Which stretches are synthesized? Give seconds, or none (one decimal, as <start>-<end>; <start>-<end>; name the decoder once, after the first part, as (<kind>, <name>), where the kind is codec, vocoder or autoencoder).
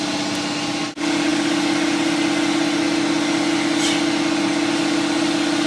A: none